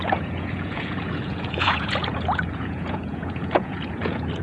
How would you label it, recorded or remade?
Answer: remade